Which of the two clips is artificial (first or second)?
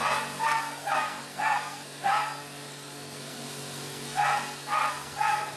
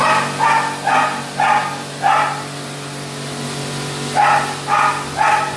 first